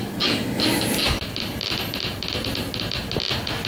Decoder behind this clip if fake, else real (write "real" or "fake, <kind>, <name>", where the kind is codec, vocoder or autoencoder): real